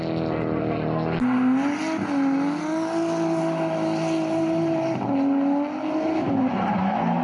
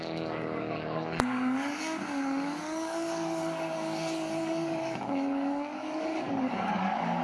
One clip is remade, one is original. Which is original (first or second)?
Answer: first